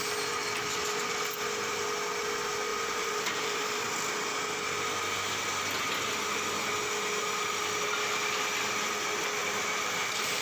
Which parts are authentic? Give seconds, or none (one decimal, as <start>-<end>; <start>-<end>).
0.0-2.7; 3.9-9.4